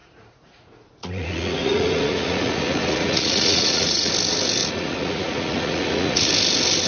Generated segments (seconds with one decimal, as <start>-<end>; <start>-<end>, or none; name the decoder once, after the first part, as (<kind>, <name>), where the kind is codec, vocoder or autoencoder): 0.0-4.1 (vocoder, Vocos); 4.6-6.3